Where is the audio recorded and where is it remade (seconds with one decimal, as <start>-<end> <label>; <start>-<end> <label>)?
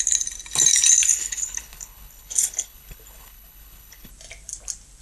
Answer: 0.0-1.1 recorded; 1.1-4.1 remade; 4.1-5.0 recorded